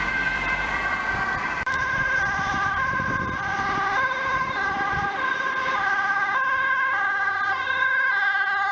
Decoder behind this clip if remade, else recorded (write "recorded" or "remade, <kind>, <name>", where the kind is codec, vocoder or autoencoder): remade, vocoder, BigVGAN v2